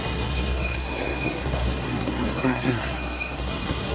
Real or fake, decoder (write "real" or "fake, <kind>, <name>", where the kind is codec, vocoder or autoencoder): fake, codec, SNAC